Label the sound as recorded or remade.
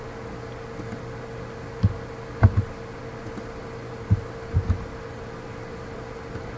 recorded